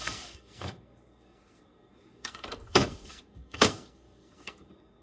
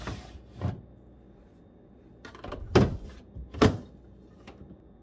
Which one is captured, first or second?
second